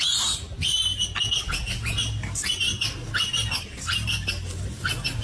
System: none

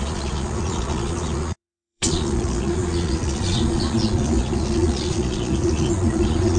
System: vocoder, Vocos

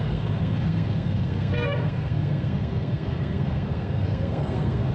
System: codec, SNAC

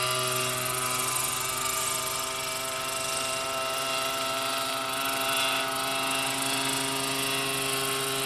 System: none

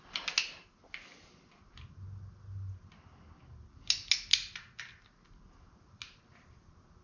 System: none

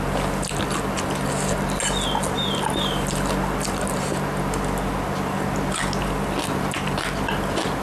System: none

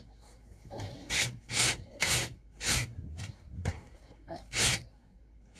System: codec, SNAC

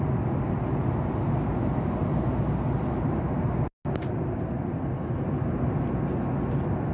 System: none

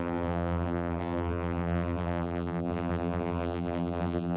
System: vocoder, BigVGAN v2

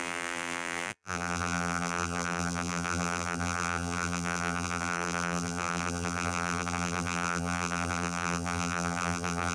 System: vocoder, BigVGAN v2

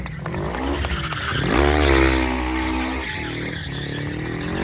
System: none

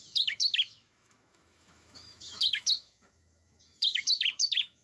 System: autoencoder, DAC-VAE